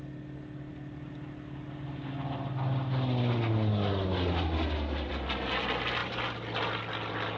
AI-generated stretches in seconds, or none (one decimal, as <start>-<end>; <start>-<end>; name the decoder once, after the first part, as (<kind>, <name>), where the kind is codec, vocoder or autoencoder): 6.0-6.8 (vocoder, BigVGAN v2)